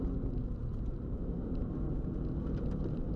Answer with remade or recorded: recorded